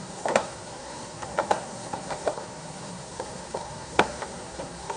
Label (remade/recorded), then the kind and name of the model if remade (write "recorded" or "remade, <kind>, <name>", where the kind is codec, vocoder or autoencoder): remade, codec, SNAC